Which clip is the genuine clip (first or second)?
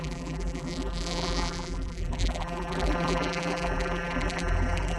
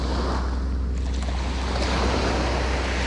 second